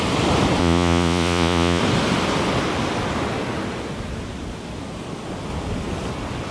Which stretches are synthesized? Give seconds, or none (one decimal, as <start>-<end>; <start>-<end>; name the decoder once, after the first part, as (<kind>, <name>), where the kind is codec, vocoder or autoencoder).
0.6-1.8 (vocoder, Vocos)